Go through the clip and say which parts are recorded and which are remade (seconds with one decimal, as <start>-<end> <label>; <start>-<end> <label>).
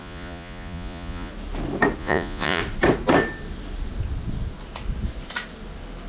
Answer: 0.0-1.3 remade; 1.3-2.0 recorded; 2.0-2.6 remade; 2.6-6.1 recorded